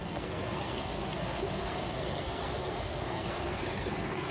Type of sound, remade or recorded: remade